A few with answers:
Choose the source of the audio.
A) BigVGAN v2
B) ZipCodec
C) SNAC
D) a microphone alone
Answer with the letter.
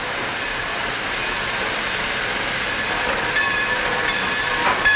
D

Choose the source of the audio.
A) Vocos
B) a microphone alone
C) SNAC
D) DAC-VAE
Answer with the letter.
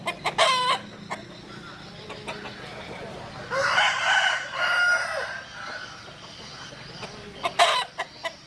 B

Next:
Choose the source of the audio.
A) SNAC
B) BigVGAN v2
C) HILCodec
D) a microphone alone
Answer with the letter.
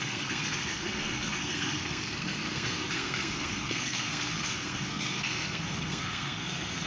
A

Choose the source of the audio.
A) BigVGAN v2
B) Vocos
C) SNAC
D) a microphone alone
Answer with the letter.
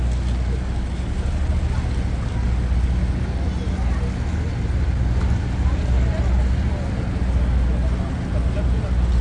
D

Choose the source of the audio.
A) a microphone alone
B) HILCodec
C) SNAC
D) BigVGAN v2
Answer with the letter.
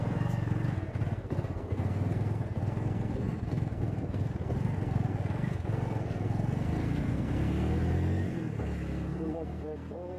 C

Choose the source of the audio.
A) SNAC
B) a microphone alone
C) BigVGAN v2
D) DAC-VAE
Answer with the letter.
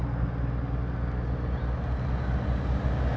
B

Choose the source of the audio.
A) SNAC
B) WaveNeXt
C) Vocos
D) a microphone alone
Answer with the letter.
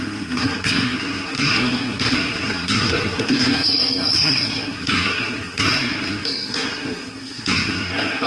A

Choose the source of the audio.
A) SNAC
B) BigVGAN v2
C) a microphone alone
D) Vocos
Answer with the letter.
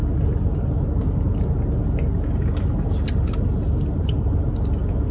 C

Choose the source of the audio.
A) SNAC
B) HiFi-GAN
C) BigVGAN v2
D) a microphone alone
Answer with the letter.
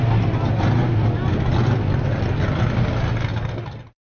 D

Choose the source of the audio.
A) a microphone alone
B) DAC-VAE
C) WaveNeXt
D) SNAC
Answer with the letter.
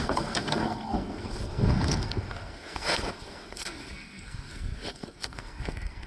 D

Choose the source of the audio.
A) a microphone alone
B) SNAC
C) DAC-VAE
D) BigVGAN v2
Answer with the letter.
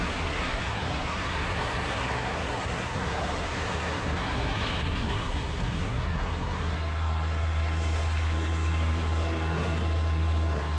B